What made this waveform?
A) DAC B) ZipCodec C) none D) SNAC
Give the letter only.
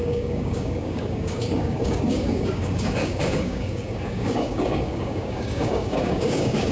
A